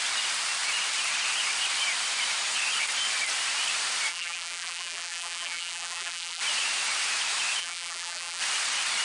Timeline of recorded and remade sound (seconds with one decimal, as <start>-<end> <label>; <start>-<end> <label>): 0.0-4.1 recorded; 4.1-6.4 remade; 6.4-7.6 recorded; 7.6-8.4 remade; 8.4-9.0 recorded